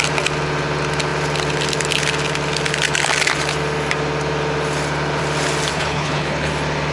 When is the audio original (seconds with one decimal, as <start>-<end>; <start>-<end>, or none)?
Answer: 0.0-5.7; 6.5-6.9